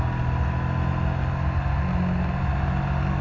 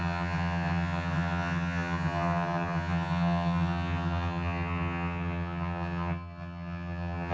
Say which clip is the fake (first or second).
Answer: second